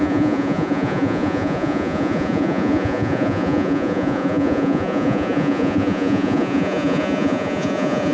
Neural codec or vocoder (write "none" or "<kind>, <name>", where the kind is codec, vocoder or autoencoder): vocoder, Vocos